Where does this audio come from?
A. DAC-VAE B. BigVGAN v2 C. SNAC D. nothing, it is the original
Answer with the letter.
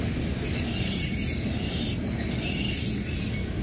D